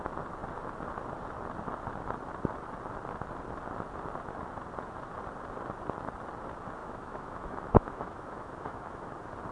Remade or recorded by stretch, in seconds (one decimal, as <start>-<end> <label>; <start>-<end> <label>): 0.0-6.8 recorded; 6.8-9.1 remade; 9.1-9.5 recorded